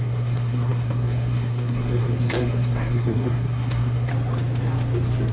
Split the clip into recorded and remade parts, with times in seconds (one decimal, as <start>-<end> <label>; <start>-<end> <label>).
0.0-4.1 remade; 4.1-5.3 recorded